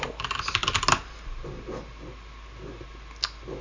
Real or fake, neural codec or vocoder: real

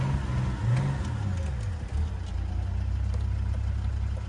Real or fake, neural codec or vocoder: real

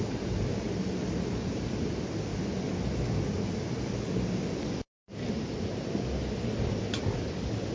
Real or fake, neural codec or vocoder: real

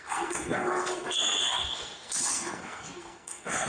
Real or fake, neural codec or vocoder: fake, codec, SNAC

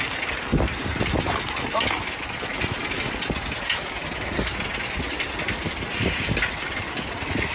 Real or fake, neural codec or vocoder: real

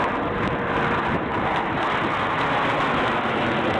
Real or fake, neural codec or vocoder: real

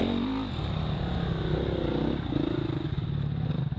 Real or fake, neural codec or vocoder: real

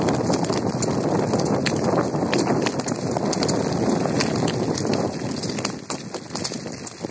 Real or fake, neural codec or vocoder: real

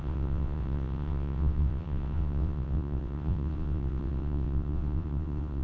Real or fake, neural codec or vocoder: fake, vocoder, WaveNeXt